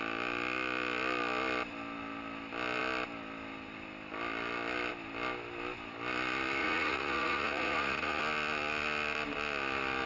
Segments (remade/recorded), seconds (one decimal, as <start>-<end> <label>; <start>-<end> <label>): 0.0-6.6 recorded; 6.6-8.2 remade; 8.2-10.1 recorded